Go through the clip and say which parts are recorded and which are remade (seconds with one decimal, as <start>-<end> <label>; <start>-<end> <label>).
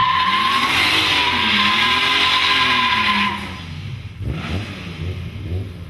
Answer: 0.0-0.7 remade; 0.7-5.9 recorded